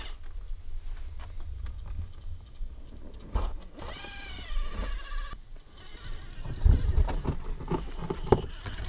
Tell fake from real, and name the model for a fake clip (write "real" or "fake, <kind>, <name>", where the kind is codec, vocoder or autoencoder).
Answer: real